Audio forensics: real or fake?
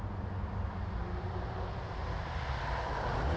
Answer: real